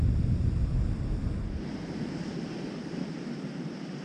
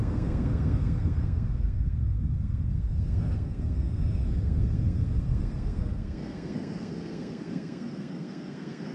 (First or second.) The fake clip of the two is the second